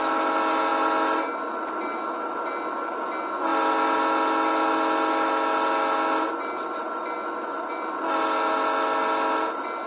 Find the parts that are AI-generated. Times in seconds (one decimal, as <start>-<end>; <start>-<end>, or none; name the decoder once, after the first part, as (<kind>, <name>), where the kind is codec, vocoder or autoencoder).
none